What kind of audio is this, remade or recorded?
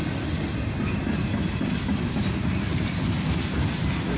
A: recorded